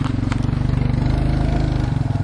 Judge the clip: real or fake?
real